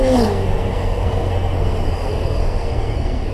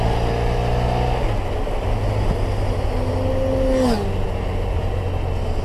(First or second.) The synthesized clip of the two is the first